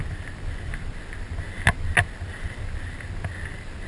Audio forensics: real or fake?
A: real